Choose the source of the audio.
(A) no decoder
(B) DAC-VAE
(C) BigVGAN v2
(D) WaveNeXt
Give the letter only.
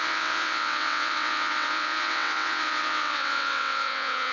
D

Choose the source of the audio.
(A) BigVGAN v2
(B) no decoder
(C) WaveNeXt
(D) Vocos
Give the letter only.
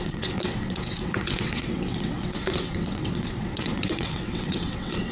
C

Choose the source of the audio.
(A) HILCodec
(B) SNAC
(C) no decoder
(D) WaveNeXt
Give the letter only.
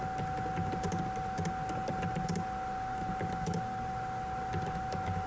C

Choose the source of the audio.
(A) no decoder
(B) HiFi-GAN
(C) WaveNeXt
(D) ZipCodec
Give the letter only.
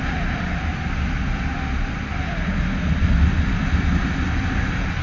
A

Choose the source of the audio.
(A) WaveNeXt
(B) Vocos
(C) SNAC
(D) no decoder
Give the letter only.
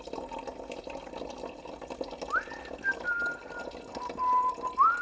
D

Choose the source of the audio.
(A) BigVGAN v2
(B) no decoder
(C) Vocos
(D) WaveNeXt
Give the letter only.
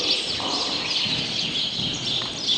B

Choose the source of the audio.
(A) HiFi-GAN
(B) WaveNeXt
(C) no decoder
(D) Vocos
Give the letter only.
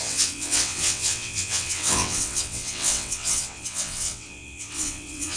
B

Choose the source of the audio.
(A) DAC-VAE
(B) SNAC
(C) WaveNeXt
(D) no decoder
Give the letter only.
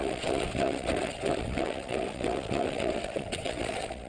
C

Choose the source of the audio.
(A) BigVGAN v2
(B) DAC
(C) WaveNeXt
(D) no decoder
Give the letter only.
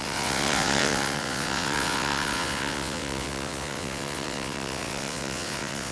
C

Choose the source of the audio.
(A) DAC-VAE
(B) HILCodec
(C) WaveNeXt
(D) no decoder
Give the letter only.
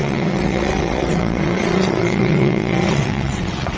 C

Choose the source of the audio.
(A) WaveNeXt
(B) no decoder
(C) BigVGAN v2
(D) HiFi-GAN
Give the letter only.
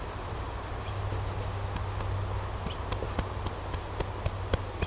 B